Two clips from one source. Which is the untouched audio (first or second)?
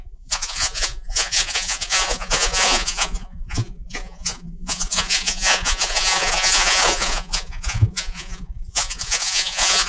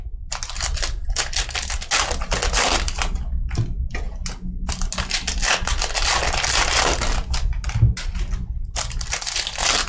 second